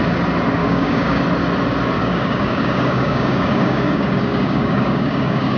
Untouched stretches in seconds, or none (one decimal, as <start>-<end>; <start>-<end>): 0.0-0.6; 1.2-2.0